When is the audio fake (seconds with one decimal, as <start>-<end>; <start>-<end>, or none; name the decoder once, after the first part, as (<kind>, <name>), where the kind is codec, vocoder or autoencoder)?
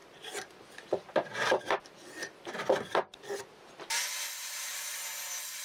4.4-5.1 (vocoder, BigVGAN v2)